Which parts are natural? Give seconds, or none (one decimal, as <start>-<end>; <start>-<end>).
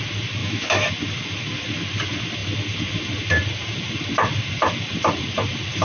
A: 0.0-0.4; 0.9-5.8